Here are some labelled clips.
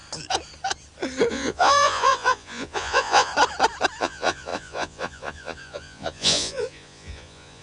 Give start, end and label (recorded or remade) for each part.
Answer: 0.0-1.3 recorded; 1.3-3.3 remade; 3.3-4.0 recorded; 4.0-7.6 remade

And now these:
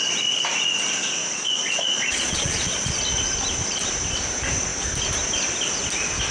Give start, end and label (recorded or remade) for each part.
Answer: 0.0-1.2 recorded; 1.2-3.0 remade; 3.0-6.3 recorded

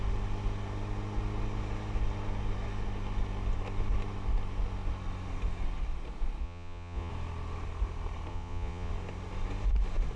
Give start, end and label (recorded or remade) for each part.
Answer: 0.0-6.4 recorded; 6.4-7.1 remade; 7.1-8.3 recorded; 8.3-8.9 remade; 8.9-10.2 recorded